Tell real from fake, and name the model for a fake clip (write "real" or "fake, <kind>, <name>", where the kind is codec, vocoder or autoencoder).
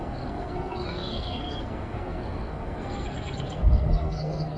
fake, codec, SNAC